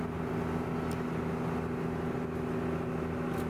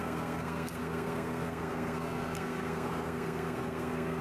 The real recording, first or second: first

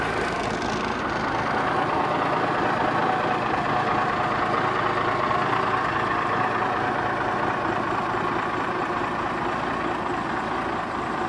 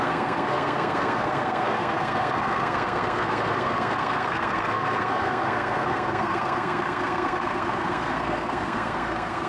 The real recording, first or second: first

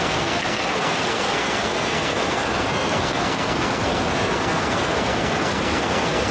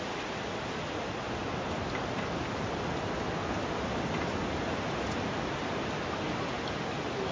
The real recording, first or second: second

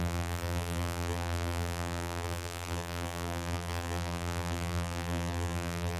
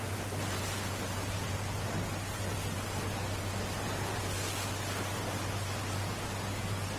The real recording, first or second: second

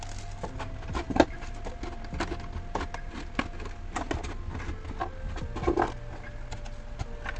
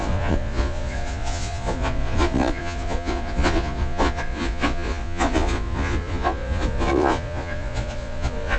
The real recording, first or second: first